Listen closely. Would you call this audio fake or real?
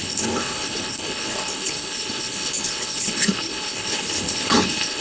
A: fake